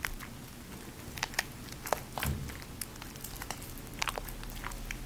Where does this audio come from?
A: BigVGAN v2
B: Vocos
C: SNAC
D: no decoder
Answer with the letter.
D